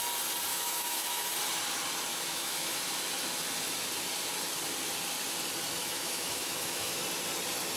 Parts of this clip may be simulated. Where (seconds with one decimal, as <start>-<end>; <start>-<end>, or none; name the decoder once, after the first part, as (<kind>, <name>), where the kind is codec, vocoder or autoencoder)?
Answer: 0.5-1.3 (autoencoder, DAC-VAE); 2.1-2.9; 5.8-7.0